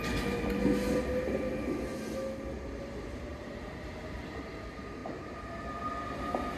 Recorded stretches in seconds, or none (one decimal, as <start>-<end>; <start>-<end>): 0.0-3.3; 4.5-5.0; 5.7-6.6